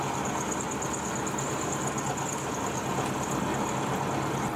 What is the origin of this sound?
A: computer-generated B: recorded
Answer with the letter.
B